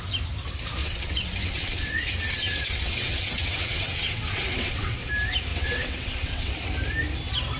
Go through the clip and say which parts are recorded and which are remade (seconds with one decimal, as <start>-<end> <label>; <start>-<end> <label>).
0.0-0.8 recorded; 0.8-5.1 remade; 5.1-5.5 recorded; 5.5-6.6 remade; 6.6-7.6 recorded